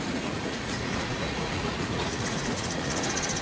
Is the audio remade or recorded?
remade